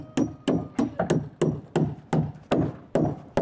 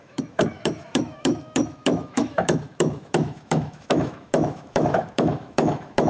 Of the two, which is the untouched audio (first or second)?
first